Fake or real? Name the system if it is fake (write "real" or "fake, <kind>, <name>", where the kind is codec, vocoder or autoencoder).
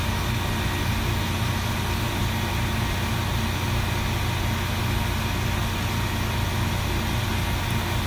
real